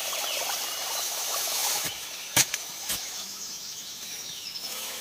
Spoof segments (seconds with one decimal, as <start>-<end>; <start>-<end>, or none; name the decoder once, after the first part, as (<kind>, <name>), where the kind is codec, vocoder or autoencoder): 1.0-5.0 (autoencoder, DAC-VAE)